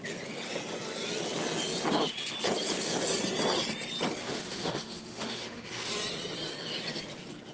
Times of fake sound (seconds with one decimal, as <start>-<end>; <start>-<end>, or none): 4.2-5.9